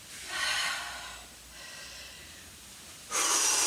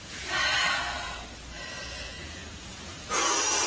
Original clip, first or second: first